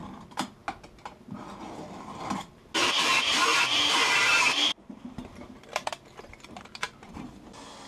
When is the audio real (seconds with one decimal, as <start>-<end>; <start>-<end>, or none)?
0.0-2.8; 7.4-7.9